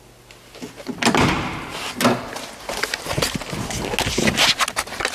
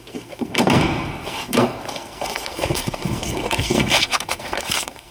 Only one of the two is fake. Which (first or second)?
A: second